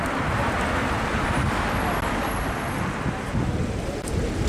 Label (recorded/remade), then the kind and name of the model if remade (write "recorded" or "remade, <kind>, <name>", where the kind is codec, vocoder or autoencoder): recorded